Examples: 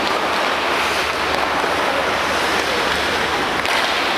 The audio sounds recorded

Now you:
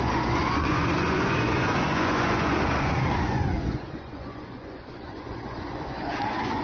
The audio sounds remade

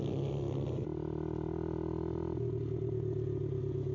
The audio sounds recorded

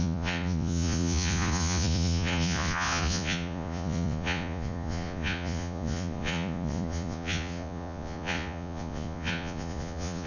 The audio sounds remade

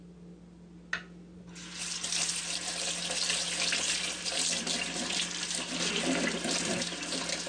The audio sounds recorded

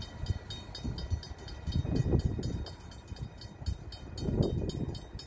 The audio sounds recorded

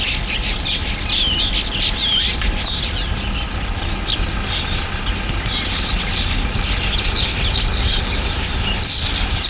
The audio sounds recorded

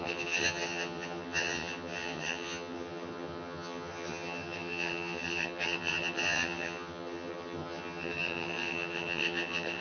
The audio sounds remade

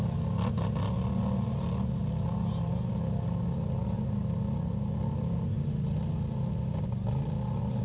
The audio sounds recorded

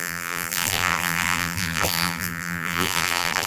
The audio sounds remade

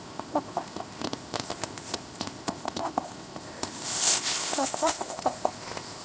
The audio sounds remade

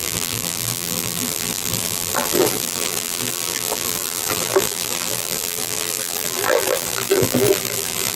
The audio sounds remade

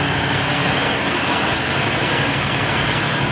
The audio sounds remade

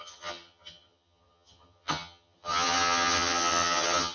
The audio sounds remade